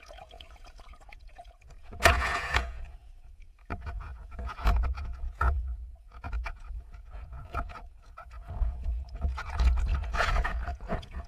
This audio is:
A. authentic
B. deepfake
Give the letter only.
B